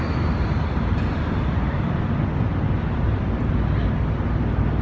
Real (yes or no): yes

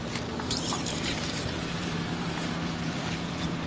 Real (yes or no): no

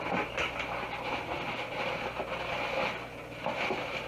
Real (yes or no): yes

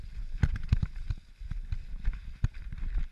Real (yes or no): yes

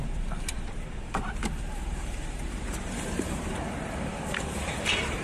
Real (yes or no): no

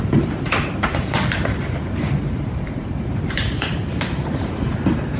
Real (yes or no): no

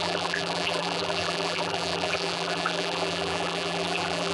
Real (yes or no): no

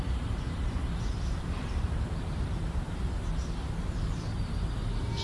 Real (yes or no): no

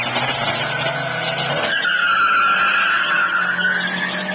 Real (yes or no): yes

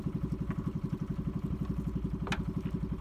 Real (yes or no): yes